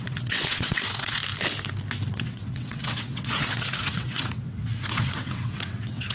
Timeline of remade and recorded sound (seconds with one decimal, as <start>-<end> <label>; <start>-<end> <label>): 0.0-1.2 remade; 1.2-2.1 recorded; 2.1-6.1 remade